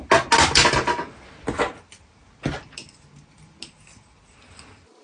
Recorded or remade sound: recorded